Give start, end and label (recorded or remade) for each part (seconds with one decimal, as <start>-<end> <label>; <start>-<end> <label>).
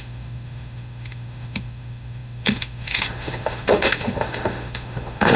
0.0-5.4 remade